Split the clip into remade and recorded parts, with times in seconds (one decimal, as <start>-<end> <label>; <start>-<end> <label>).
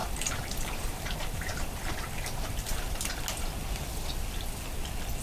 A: 0.0-3.1 remade; 3.1-5.2 recorded